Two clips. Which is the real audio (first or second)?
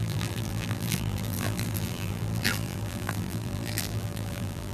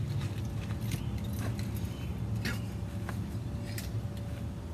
second